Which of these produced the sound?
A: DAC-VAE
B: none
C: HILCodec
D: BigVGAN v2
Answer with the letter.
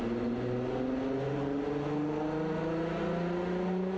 B